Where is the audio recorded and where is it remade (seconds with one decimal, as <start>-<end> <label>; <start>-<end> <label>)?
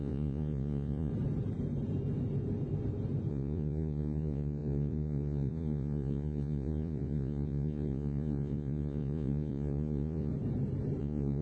0.0-1.1 remade; 1.1-3.3 recorded; 3.3-10.3 remade; 10.3-11.0 recorded; 11.0-11.4 remade